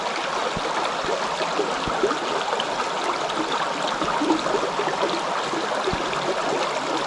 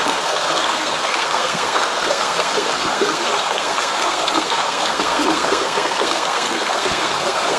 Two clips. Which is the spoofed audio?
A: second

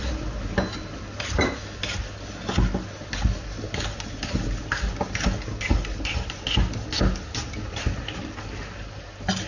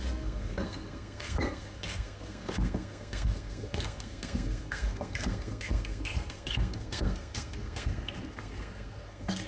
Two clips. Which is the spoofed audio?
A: second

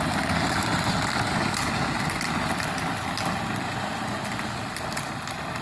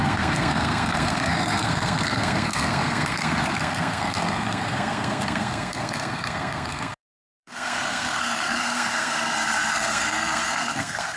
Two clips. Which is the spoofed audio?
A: second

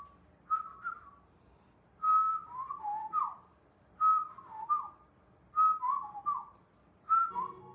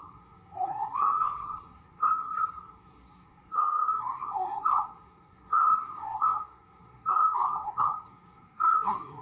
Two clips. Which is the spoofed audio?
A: second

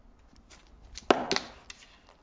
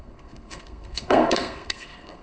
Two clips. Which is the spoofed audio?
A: second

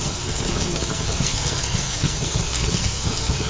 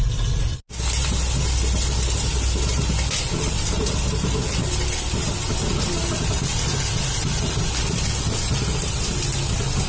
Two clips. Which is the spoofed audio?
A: first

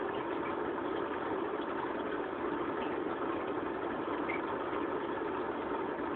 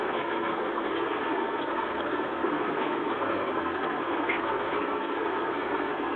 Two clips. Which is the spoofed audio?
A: second